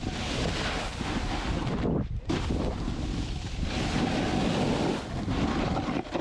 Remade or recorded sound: recorded